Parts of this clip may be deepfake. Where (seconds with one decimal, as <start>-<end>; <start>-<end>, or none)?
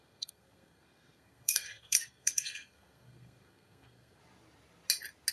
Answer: 0.0-4.2